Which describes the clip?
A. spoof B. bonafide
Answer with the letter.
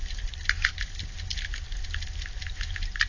B